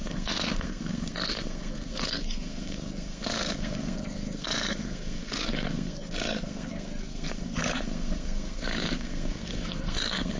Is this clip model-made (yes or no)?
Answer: yes